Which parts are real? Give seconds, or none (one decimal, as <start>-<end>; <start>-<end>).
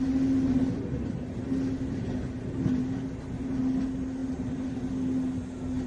0.0-5.9